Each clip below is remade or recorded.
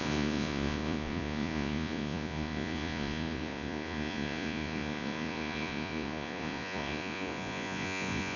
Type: remade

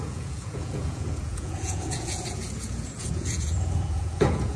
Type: remade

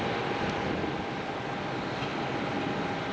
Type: recorded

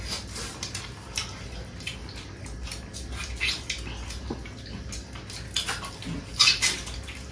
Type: recorded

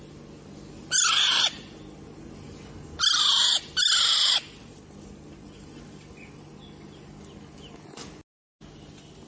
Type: recorded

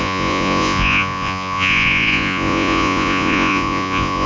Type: remade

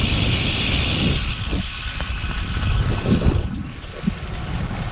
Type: recorded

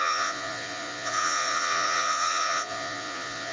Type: remade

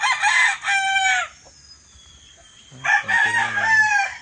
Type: recorded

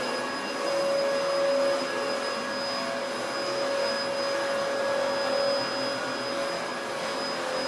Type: recorded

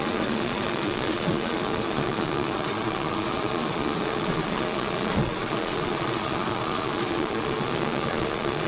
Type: remade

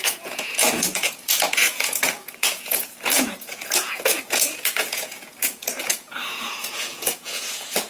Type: remade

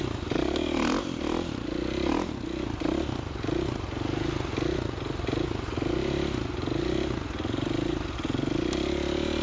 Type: recorded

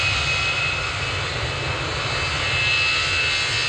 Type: recorded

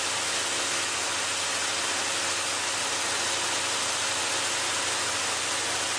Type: recorded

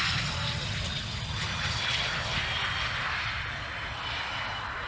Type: recorded